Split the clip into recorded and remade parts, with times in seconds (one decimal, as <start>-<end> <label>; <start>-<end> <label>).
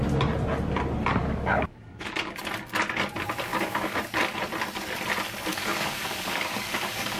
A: 0.0-1.2 recorded; 1.2-2.3 remade; 2.3-3.5 recorded; 3.5-4.0 remade; 4.0-5.5 recorded; 5.5-7.2 remade